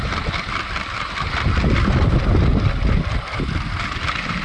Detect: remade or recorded recorded